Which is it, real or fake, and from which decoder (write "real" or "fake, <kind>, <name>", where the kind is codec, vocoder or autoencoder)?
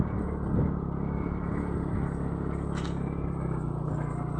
real